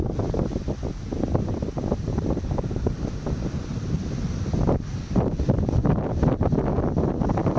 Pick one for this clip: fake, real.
real